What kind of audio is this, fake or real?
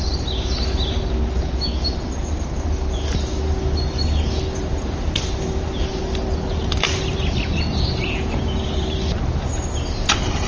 real